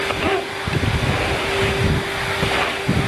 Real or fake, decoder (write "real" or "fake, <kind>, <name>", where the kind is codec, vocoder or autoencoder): real